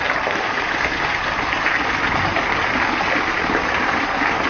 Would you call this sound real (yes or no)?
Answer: yes